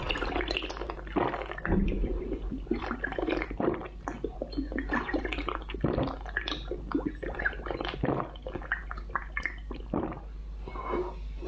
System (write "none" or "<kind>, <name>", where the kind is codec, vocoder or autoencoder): none